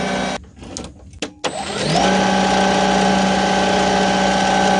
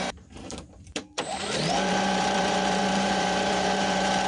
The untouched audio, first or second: first